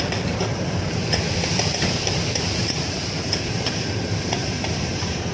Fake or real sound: fake